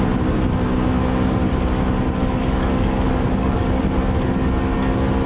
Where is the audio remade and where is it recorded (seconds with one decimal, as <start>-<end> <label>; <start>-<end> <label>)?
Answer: 0.0-2.4 recorded; 2.4-3.8 remade; 3.8-5.3 recorded